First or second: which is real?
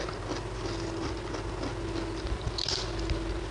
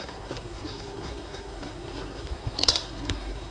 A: first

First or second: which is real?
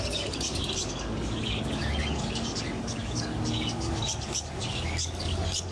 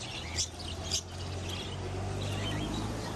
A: second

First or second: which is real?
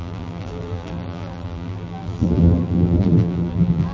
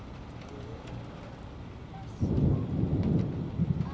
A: second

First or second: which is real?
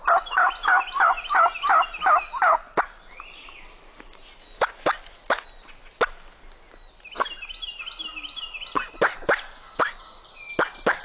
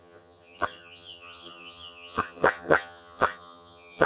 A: first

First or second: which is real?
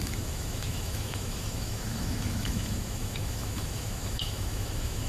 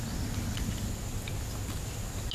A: second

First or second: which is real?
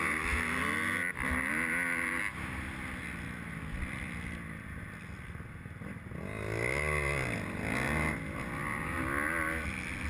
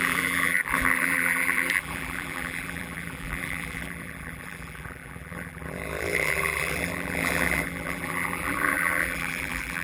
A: first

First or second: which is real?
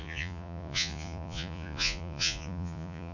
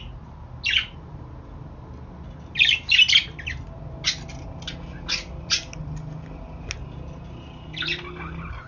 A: second